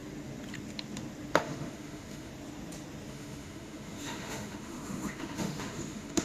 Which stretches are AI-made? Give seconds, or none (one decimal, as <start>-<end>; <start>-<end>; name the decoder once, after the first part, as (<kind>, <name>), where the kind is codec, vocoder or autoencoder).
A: 1.4-2.3 (autoencoder, DAC-VAE); 3.1-6.2